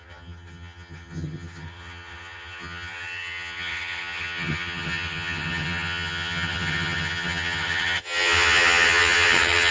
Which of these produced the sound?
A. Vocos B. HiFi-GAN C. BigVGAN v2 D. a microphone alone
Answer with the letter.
B